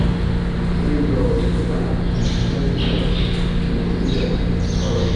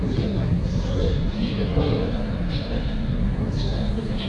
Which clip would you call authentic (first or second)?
first